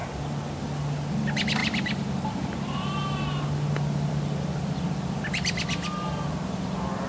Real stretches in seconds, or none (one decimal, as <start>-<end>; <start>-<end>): 0.0-0.6